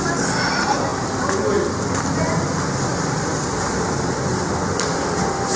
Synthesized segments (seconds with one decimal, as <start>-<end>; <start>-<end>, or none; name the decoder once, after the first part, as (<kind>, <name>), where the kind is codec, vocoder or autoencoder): none